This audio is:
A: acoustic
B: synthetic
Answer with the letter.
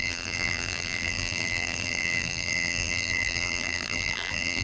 B